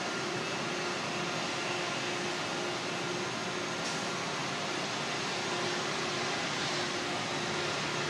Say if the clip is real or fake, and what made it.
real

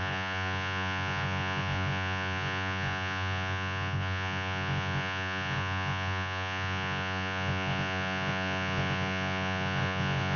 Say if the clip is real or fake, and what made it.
fake, vocoder, Vocos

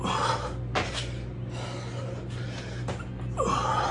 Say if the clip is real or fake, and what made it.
real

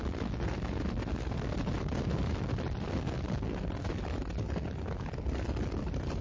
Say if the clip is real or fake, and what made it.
real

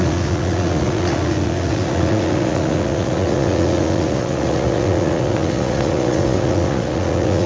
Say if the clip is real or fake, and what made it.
fake, vocoder, Vocos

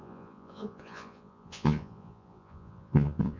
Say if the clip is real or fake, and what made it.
fake, vocoder, Vocos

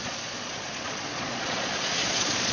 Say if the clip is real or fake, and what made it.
fake, vocoder, Vocos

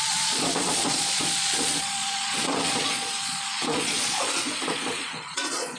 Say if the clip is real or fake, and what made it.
fake, vocoder, Vocos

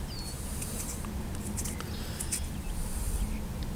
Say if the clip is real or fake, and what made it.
real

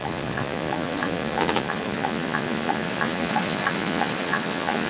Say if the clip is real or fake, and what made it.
fake, vocoder, Vocos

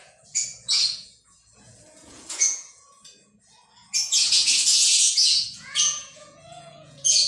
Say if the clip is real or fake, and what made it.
fake, vocoder, Vocos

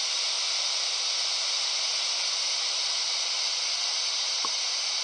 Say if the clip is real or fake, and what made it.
real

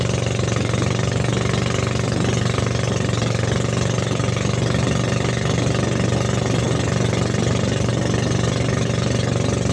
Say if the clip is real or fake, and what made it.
real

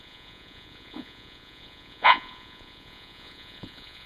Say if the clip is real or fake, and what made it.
fake, vocoder, Vocos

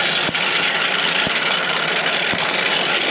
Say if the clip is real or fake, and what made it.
real